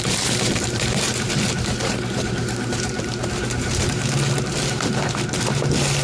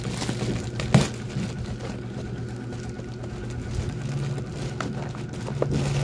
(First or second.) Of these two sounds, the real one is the second